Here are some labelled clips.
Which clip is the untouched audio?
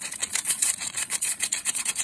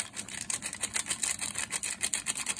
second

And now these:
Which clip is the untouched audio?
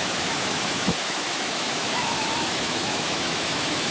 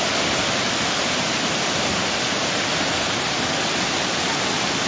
second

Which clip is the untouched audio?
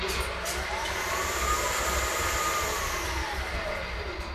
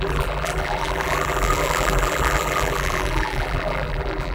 first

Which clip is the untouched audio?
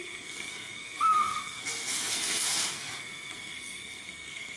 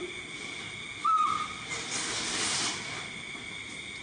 second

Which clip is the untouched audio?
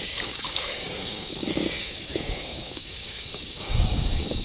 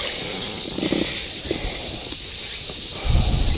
second